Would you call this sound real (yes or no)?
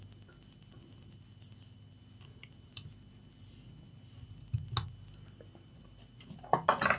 yes